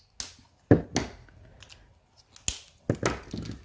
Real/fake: real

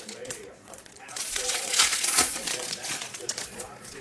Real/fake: fake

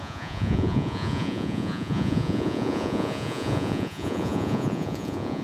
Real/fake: fake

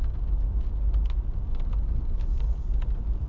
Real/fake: real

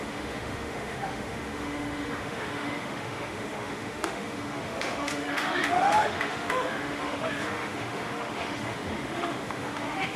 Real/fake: fake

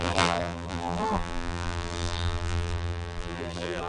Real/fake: fake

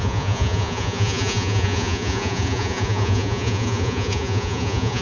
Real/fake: fake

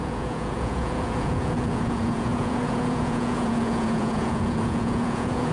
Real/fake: fake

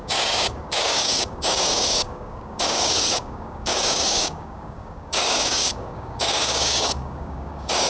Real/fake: fake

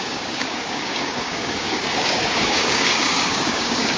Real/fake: fake